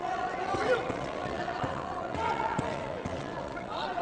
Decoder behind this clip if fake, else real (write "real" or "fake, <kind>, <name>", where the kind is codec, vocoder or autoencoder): fake, vocoder, WaveNeXt